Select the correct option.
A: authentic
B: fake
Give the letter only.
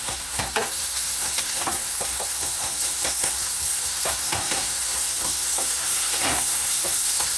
B